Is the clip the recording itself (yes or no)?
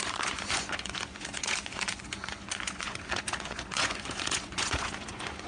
no